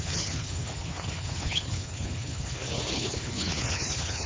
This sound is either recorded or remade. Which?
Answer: remade